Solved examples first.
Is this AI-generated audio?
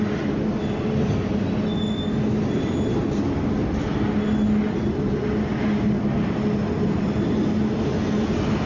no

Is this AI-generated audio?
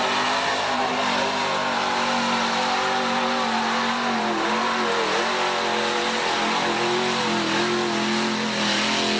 no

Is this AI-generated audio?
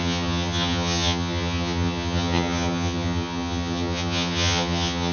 yes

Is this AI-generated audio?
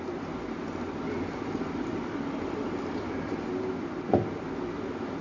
no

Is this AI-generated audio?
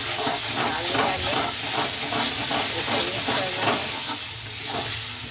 no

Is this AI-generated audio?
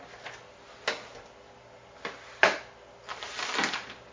no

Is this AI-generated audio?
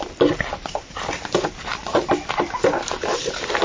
no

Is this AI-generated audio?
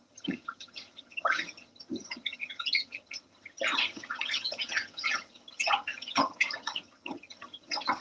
yes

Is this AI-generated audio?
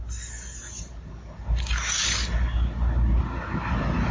no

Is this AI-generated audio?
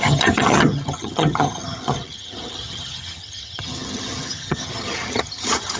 yes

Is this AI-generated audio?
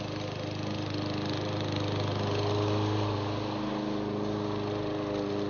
no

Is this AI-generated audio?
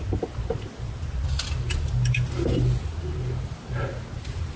no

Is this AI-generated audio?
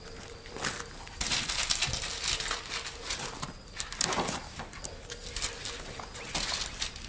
no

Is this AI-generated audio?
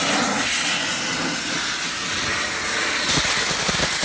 no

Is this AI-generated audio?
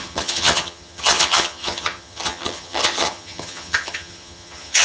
yes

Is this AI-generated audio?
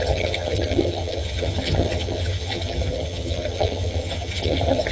yes